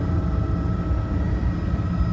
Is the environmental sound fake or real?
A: real